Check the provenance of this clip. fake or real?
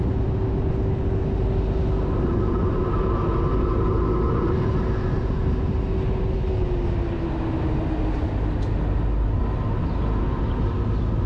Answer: real